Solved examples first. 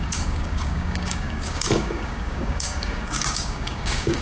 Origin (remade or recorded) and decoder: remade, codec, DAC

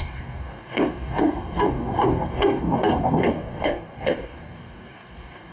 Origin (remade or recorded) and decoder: remade, codec, DAC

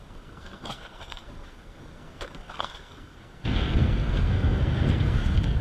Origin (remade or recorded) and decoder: remade, codec, SNAC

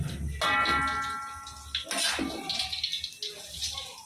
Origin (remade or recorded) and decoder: recorded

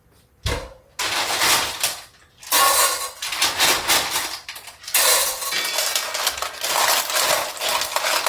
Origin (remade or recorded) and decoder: recorded